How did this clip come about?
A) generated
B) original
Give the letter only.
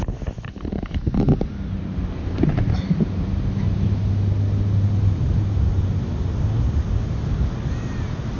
B